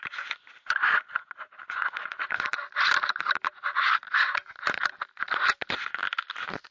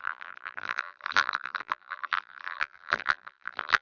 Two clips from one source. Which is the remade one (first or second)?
second